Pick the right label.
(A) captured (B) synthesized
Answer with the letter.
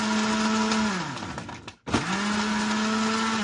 A